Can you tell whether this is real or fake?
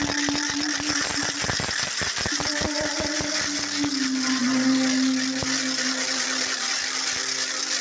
real